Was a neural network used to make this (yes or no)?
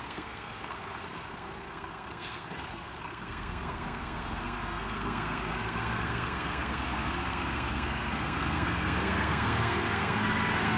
yes